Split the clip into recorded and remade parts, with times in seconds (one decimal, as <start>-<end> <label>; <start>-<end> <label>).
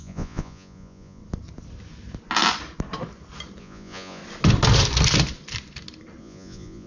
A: 0.0-1.2 remade; 1.2-3.6 recorded; 3.6-4.2 remade; 4.2-6.2 recorded; 6.2-6.9 remade